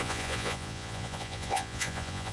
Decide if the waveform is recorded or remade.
remade